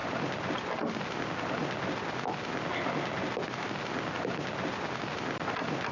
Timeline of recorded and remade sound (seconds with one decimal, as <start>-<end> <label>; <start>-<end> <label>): 0.0-1.6 remade; 1.6-5.1 recorded; 5.1-5.9 remade